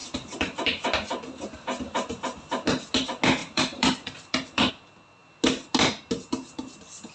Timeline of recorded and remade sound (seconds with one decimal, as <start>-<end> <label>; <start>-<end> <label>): 0.0-1.8 remade; 1.8-3.4 recorded; 3.4-4.7 remade; 4.7-7.1 recorded